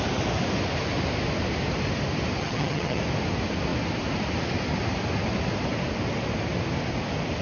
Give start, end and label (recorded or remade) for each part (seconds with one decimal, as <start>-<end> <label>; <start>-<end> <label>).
0.0-2.4 recorded; 2.4-3.0 remade; 3.0-7.4 recorded